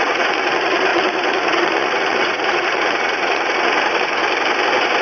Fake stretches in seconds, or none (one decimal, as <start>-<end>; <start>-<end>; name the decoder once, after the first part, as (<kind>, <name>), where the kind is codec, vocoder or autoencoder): 0.0-4.2 (vocoder, Vocos)